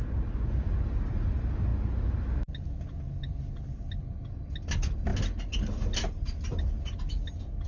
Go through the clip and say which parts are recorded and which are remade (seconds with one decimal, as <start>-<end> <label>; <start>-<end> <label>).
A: 0.0-7.7 recorded